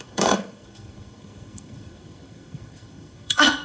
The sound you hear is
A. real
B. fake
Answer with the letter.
B